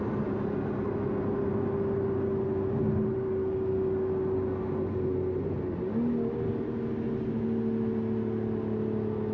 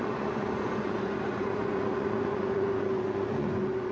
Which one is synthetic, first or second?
second